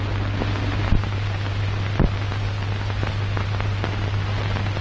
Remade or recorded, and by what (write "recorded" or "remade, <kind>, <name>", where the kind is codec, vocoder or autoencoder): recorded